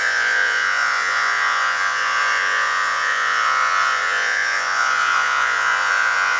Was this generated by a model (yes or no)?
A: yes